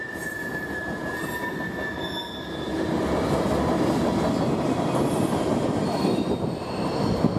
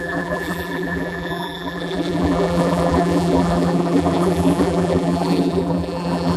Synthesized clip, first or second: second